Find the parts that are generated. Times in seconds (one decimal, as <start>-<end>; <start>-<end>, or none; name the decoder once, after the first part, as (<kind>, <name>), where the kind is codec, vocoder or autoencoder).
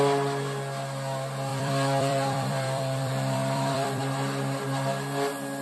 1.5-4.0 (vocoder, BigVGAN v2)